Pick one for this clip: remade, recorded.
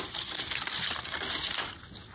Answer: recorded